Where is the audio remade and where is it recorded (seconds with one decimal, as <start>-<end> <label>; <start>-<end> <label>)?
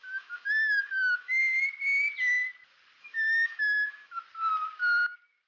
0.0-1.4 remade; 1.4-3.0 recorded; 3.0-4.2 remade; 4.2-5.5 recorded